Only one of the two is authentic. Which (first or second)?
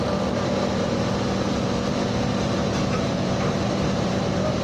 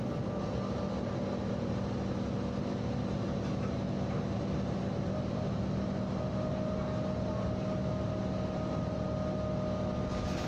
second